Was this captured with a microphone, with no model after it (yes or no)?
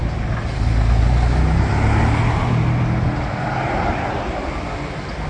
yes